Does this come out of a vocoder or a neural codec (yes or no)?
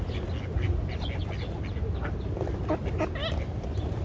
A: no